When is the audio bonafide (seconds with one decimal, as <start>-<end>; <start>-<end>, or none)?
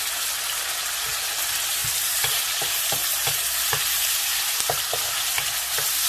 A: 0.0-1.8; 2.5-6.1